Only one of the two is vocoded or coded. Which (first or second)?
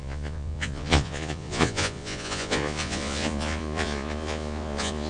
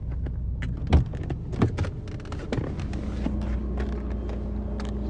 first